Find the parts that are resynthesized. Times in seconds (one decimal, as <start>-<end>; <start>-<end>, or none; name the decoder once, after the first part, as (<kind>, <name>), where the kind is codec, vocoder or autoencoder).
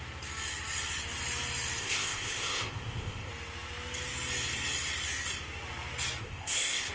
1.8-3.3 (codec, ZipCodec); 6.2-6.9